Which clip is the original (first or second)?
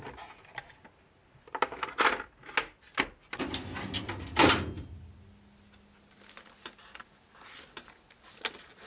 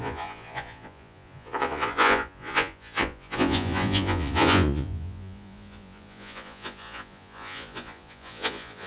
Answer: first